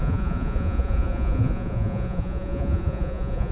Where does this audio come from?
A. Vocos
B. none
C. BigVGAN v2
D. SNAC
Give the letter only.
A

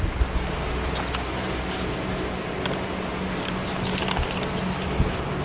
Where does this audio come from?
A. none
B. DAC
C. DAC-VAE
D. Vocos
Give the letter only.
A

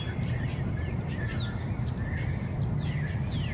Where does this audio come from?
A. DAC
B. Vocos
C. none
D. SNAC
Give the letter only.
C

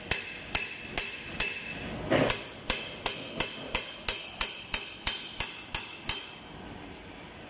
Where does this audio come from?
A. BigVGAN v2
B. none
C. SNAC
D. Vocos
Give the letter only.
B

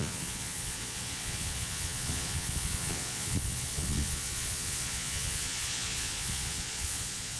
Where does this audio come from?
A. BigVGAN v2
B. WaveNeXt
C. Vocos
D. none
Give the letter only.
C